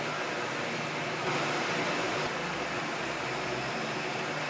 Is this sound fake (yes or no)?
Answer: no